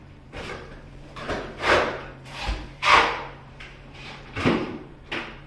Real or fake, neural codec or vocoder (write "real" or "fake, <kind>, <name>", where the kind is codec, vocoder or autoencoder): fake, vocoder, BigVGAN v2